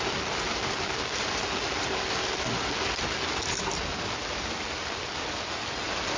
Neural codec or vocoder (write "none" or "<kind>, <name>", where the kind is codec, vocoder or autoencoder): none